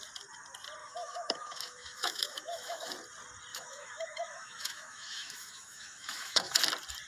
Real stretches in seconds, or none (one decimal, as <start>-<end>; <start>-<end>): 0.0-0.8; 2.9-3.5; 6.6-7.1